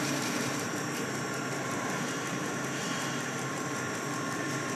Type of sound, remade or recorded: remade